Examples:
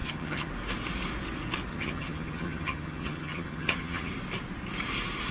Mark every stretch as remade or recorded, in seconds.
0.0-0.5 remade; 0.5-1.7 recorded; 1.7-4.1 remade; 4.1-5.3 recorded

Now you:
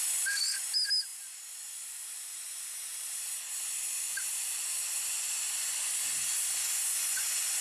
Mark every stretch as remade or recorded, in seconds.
0.0-7.6 recorded

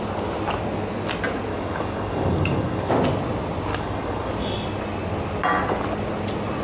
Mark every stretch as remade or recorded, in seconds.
0.0-1.5 recorded; 1.5-2.9 remade; 2.9-3.7 recorded; 3.7-4.3 remade; 4.3-6.6 recorded

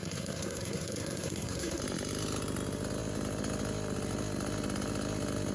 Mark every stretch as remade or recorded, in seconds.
0.0-1.8 remade; 1.8-5.5 recorded

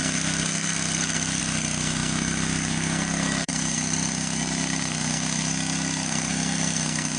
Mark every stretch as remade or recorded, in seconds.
0.0-7.2 remade